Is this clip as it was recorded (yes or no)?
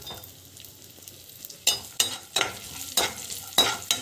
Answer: yes